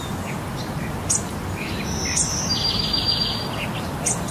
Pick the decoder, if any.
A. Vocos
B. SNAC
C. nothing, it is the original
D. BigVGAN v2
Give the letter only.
C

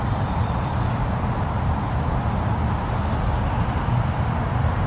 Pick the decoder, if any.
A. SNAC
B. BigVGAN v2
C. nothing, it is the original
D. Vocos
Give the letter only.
C